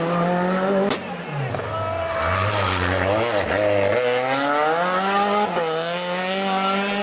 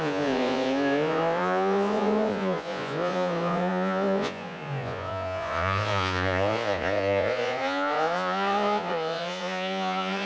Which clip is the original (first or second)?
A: first